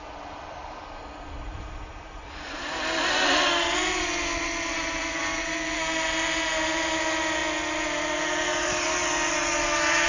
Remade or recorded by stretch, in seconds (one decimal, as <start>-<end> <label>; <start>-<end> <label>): 0.0-1.5 recorded; 1.5-3.1 remade; 3.1-10.1 recorded

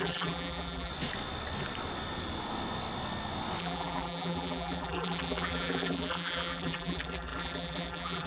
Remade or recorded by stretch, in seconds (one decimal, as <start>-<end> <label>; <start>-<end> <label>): 0.0-0.9 remade; 0.9-3.6 recorded; 3.6-8.3 remade

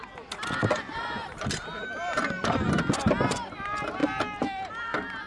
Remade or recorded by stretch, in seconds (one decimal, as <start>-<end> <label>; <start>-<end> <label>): 0.0-0.6 recorded; 0.6-2.7 remade; 2.7-4.0 recorded; 4.0-4.7 remade; 4.7-5.3 recorded